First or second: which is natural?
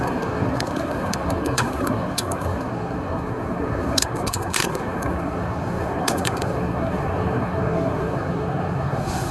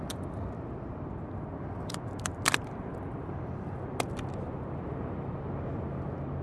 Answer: second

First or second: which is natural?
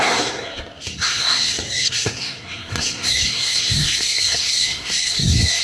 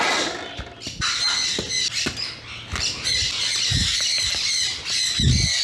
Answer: second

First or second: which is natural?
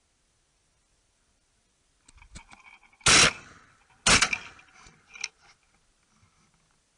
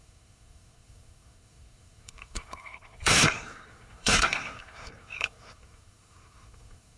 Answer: first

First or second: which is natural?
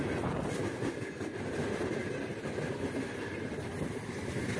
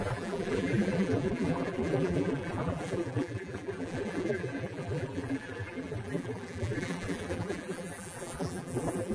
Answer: first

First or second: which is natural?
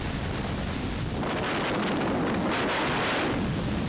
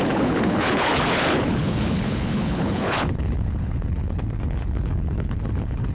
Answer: first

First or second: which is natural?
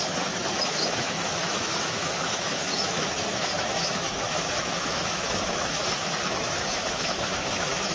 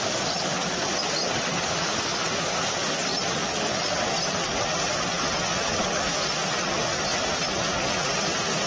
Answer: second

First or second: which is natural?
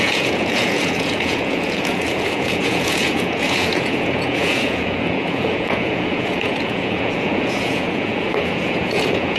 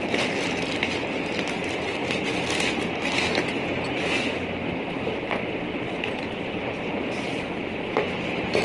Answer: second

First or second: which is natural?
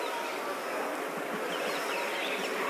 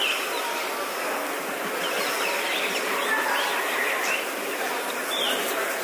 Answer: first